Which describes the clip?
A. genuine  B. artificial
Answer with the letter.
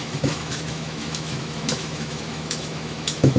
B